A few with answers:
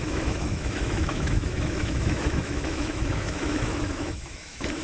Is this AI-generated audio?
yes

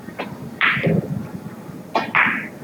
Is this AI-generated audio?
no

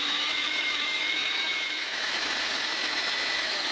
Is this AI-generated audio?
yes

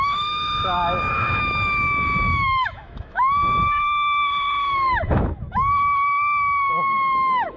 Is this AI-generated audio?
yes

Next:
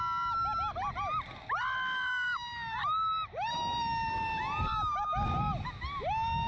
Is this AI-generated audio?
no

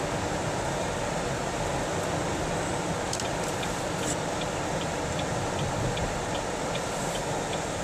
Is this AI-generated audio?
no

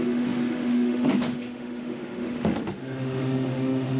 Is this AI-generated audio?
yes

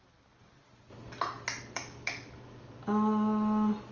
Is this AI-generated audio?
no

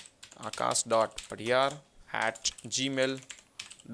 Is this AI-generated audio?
no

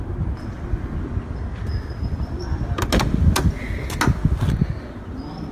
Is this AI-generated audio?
no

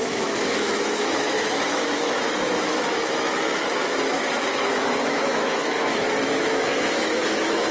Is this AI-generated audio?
yes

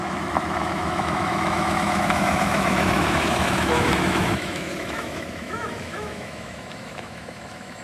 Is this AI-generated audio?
yes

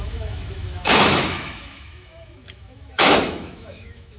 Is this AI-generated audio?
yes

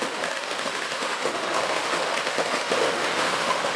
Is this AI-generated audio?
yes